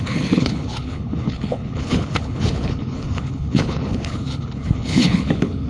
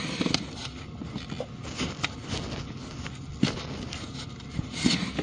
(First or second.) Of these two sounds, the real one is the second